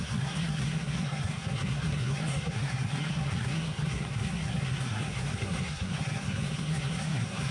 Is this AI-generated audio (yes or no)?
yes